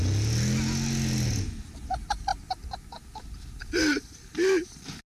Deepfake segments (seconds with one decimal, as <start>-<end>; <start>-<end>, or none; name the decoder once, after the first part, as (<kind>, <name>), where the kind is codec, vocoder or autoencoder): none